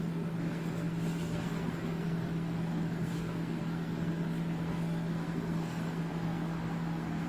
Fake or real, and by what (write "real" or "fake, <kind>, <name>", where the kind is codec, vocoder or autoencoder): fake, codec, SNAC